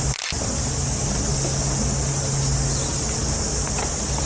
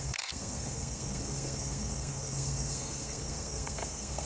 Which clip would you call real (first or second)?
first